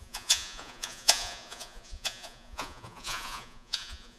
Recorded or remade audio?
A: remade